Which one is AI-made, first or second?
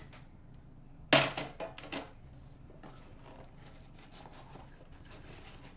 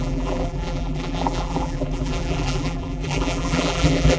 second